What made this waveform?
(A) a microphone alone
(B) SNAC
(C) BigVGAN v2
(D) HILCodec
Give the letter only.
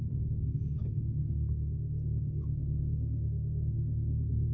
B